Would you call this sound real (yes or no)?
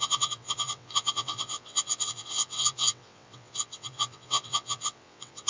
no